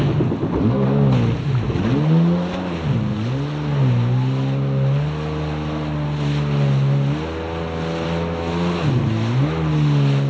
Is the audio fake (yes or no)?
no